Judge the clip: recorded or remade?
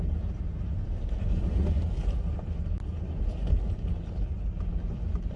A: recorded